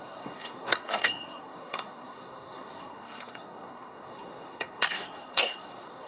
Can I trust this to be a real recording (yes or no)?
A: no